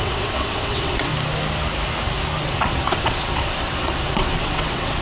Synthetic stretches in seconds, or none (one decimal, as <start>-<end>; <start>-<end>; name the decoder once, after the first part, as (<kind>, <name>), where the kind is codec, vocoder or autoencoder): 0.0-1.1 (vocoder, WaveNeXt); 2.4-5.0